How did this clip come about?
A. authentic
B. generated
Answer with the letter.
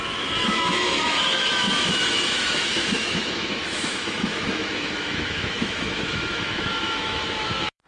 B